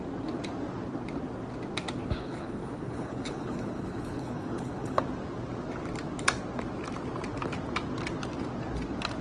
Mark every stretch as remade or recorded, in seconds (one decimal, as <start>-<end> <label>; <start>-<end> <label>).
0.0-2.2 recorded; 2.2-5.0 remade; 5.0-9.2 recorded